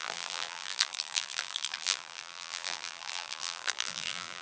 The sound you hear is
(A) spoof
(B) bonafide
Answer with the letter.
A